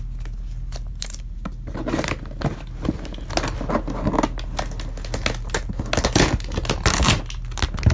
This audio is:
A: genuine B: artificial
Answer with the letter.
A